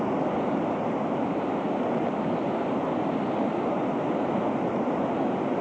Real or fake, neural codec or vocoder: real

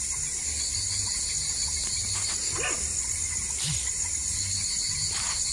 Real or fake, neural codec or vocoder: real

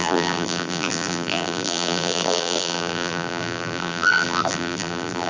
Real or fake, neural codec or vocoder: fake, vocoder, BigVGAN v2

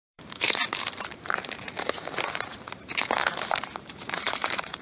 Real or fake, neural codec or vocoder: fake, vocoder, BigVGAN v2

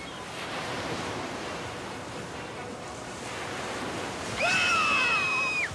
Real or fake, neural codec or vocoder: fake, vocoder, BigVGAN v2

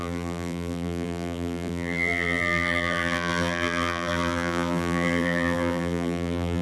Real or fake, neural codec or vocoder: fake, vocoder, BigVGAN v2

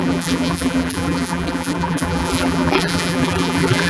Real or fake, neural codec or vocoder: fake, vocoder, BigVGAN v2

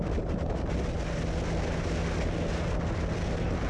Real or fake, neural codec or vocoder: real